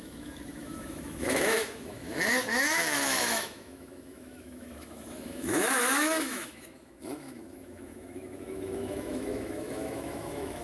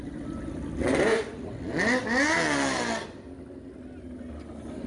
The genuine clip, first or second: second